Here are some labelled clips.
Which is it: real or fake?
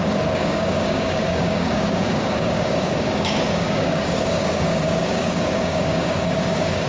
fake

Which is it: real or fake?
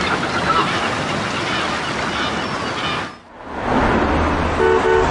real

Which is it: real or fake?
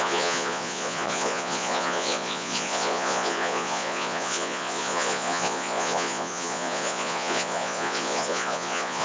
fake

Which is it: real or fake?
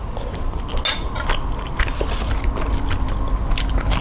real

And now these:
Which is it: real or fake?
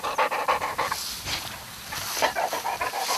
real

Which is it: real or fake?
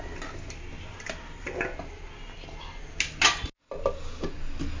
real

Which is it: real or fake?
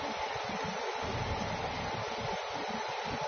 real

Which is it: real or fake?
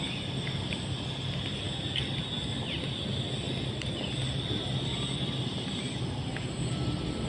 real